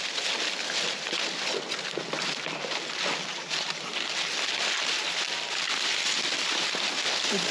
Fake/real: real